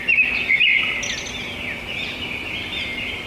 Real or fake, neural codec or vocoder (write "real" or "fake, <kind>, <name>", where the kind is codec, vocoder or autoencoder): real